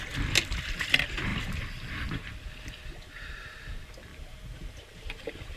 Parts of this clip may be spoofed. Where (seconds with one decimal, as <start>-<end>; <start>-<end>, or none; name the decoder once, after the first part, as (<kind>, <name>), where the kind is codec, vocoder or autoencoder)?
1.3-2.5 (vocoder, BigVGAN v2); 4.1-5.6